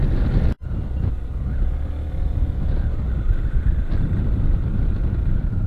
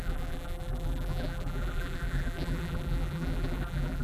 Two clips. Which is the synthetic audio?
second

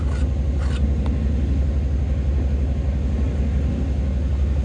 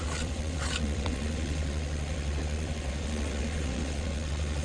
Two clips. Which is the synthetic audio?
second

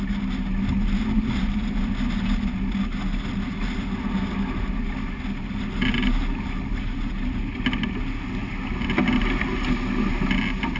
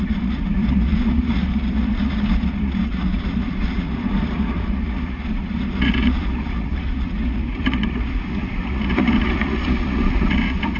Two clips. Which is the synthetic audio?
second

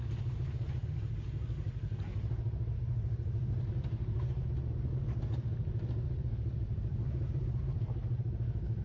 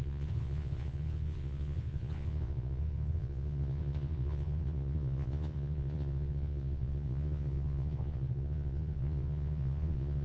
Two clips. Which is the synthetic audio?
second